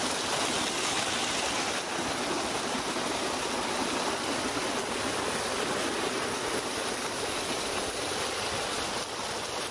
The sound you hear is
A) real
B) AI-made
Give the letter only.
A